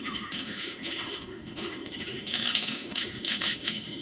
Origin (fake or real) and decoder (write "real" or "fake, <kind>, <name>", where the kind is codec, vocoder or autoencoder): fake, autoencoder, DAC-VAE